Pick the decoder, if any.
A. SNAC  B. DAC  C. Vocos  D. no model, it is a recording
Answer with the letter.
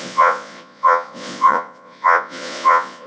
C